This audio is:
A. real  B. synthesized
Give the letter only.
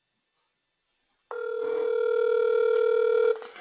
A